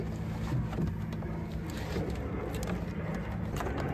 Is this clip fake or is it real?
real